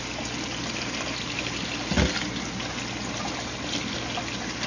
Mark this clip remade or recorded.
recorded